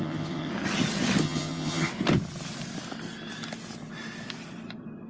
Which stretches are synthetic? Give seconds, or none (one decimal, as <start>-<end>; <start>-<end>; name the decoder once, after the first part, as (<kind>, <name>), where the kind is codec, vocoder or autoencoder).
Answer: 0.0-0.5 (vocoder, HiFi-GAN); 1.2-1.9